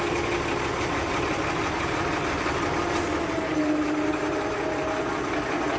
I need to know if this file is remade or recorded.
recorded